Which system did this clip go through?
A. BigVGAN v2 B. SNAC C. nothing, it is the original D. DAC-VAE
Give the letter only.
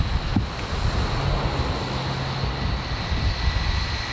C